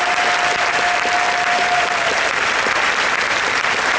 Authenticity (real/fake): real